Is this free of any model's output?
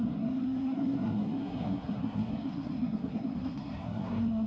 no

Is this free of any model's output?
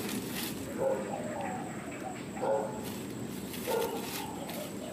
yes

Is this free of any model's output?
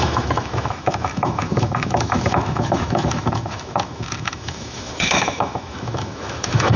no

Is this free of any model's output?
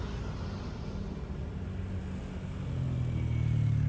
yes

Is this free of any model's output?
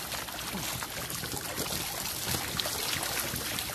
yes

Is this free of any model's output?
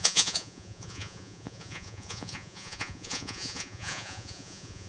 no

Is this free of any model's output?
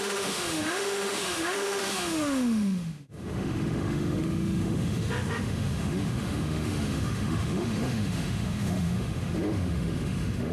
no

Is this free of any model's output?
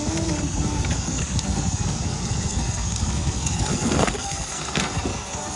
no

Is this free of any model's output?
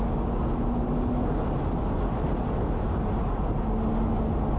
yes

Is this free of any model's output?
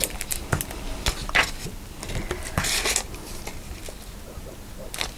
yes